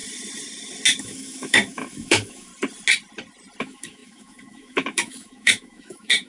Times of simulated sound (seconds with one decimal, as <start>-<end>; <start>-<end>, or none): 1.0-2.5; 3.6-6.3